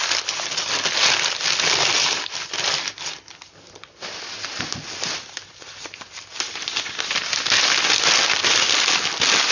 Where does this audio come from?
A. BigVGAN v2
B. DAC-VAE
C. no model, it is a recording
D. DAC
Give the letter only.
C